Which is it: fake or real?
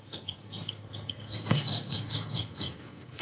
fake